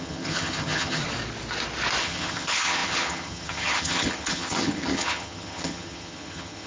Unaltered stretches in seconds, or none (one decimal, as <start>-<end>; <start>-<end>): 1.0-2.0